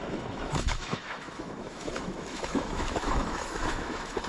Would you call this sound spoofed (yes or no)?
yes